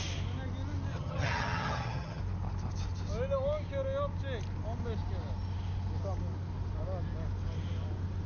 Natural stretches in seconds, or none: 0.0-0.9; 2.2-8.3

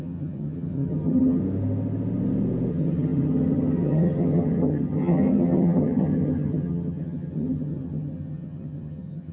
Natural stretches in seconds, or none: 1.4-2.7

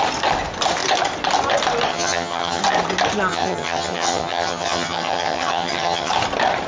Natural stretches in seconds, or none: 0.0-1.9; 2.6-3.3; 6.1-6.7

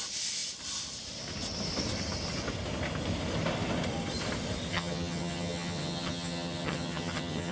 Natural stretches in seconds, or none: 0.0-4.7

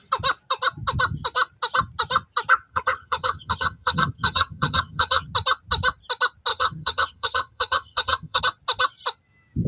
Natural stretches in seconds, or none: 0.0-2.7; 5.3-6.5; 8.4-9.7

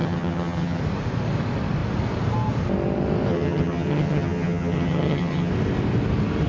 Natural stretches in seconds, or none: 0.8-3.3; 5.5-6.5